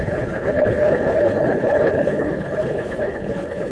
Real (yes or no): no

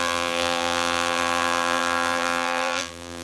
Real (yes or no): no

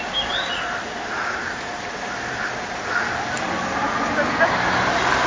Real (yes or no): yes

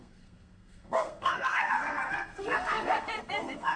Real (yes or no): no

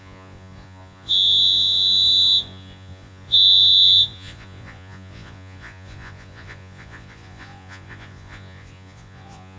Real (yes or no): no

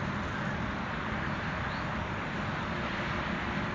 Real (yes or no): yes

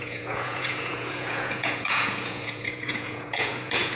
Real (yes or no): no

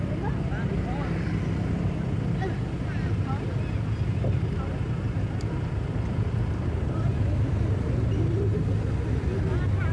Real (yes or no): yes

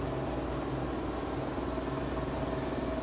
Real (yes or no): yes